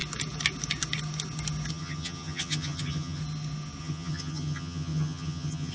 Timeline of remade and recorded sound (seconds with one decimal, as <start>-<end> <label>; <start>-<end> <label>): 0.0-1.7 recorded; 1.7-3.2 remade; 3.2-3.8 recorded; 3.8-5.7 remade